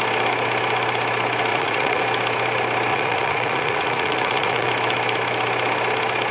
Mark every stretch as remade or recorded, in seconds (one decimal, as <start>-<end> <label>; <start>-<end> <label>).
0.0-1.5 recorded; 1.5-2.0 remade; 2.0-2.9 recorded; 2.9-4.7 remade; 4.7-6.3 recorded